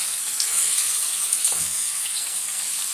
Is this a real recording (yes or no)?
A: no